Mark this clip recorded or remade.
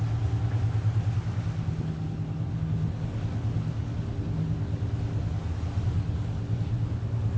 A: recorded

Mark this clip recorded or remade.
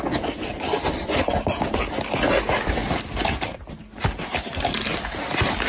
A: recorded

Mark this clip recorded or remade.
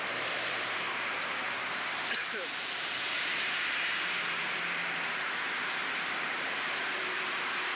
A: remade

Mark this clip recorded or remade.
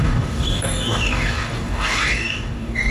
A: remade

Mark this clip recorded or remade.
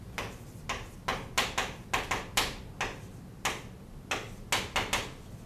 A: recorded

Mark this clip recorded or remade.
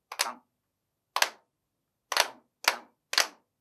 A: recorded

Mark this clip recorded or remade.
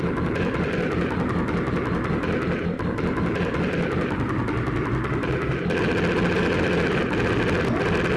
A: recorded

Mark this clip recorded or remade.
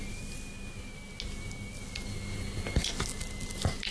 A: recorded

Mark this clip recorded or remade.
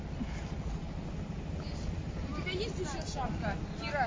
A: recorded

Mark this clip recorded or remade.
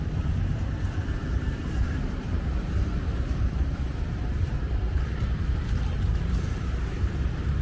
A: remade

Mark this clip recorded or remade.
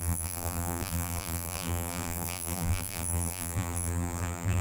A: remade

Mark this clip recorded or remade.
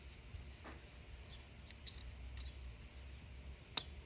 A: recorded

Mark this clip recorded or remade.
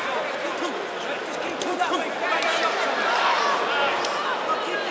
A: recorded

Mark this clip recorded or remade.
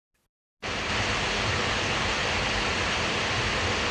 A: recorded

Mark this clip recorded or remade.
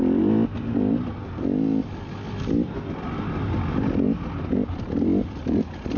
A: recorded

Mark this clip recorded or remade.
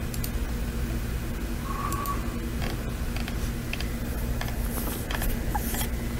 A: recorded